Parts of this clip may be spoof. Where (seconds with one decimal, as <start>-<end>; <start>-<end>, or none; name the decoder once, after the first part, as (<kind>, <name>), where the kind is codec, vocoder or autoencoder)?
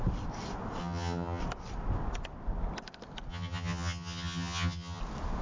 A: 0.8-1.4 (vocoder, HiFi-GAN); 3.3-5.0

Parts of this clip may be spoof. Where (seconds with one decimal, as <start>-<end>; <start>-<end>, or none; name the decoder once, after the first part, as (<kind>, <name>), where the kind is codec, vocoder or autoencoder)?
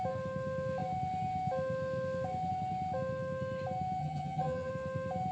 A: 4.0-4.7 (vocoder, HiFi-GAN)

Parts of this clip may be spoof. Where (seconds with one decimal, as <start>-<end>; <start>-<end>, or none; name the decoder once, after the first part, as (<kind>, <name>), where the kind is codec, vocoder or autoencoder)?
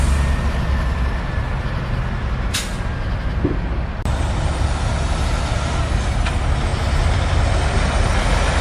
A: none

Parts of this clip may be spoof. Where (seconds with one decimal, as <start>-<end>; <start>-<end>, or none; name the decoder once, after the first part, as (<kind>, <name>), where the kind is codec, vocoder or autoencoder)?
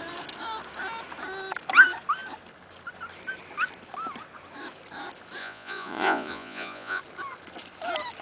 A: 5.4-7.0 (vocoder, Vocos)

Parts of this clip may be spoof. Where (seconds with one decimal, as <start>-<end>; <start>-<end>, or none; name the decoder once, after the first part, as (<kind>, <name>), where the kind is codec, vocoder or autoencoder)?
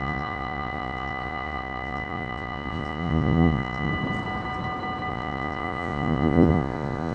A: 0.0-3.9 (vocoder, Vocos); 5.1-7.1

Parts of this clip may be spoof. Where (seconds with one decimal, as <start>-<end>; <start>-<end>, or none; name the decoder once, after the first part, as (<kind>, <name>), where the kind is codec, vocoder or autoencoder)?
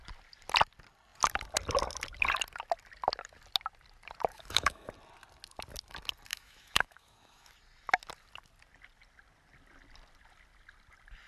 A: 4.3-4.9 (autoencoder, DAC-VAE); 6.3-7.5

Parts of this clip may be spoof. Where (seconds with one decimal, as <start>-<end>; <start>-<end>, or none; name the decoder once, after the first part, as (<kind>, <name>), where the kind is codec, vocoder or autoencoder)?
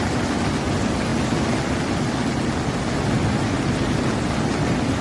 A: none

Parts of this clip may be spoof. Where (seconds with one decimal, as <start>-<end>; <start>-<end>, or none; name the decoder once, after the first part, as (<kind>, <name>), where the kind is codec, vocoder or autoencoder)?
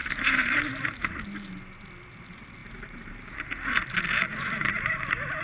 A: 0.0-1.1 (vocoder, BigVGAN v2); 2.6-3.1